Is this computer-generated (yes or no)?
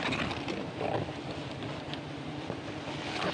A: no